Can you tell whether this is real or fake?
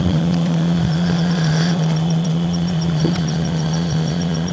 fake